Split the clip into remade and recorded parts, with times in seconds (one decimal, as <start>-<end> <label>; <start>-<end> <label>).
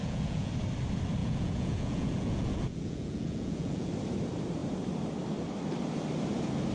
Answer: 0.0-0.5 remade; 0.5-1.2 recorded; 1.2-3.9 remade; 3.9-6.7 recorded